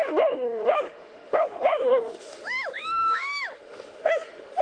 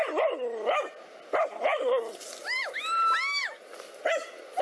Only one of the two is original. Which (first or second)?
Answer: second